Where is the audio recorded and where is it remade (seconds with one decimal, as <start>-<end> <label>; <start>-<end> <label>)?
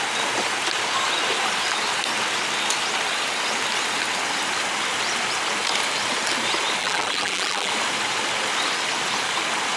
0.0-6.8 recorded; 6.8-7.7 remade; 7.7-9.8 recorded